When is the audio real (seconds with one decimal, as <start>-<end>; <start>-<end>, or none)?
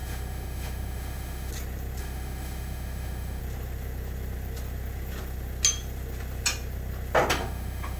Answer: 1.5-2.0; 3.4-7.3